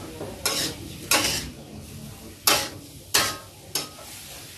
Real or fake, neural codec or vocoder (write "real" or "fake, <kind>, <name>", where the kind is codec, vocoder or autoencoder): real